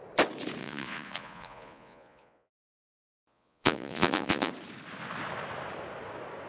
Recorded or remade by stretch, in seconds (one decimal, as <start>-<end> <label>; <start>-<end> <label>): 0.0-0.6 recorded; 0.6-4.5 remade; 4.5-6.5 recorded